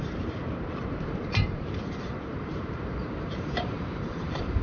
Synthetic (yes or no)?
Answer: yes